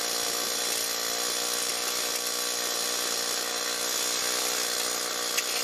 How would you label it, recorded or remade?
recorded